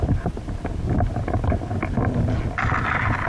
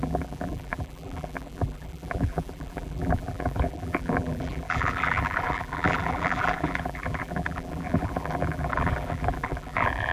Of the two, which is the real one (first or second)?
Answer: first